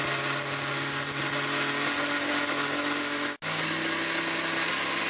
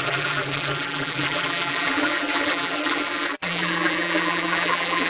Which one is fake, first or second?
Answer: second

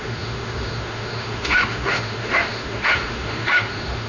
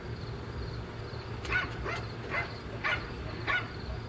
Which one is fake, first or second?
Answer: first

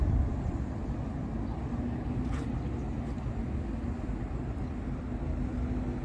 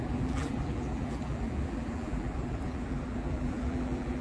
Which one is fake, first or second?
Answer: second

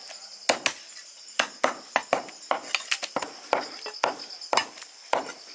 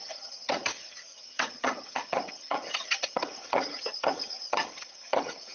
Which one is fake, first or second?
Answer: second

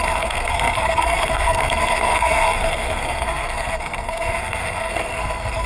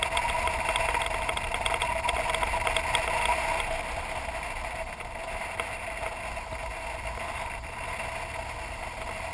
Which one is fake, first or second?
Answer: first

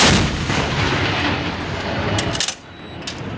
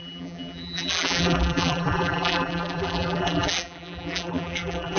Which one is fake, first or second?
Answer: second